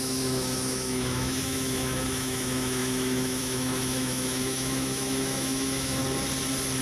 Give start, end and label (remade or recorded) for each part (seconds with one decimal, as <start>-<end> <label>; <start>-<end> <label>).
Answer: 0.0-6.0 remade; 6.0-6.8 recorded